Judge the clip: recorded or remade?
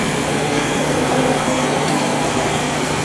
remade